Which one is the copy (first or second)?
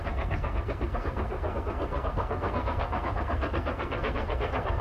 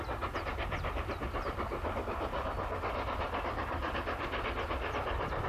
first